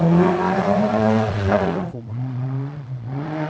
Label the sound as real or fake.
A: fake